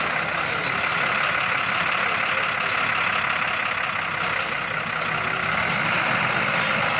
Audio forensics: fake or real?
real